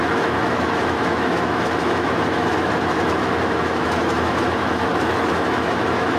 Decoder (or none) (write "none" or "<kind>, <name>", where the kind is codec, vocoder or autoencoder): autoencoder, DAC-VAE